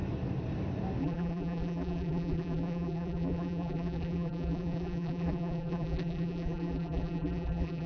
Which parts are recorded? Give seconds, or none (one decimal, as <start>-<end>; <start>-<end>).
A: 0.0-1.0